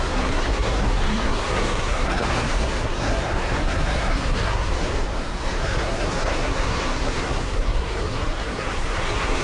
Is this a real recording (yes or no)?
no